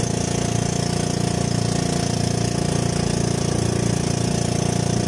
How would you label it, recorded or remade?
recorded